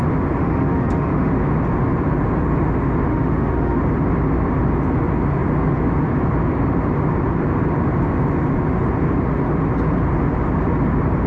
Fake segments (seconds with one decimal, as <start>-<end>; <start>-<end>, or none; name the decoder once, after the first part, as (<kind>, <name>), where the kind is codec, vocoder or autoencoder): 0.4-1.3 (autoencoder, DAC-VAE); 3.1-3.8